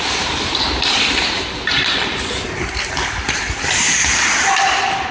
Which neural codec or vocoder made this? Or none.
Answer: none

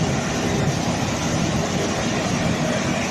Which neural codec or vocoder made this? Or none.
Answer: none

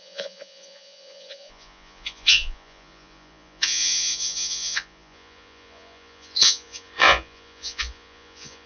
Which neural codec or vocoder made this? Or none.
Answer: vocoder, Vocos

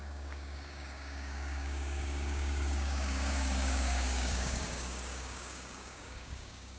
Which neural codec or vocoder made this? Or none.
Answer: codec, DAC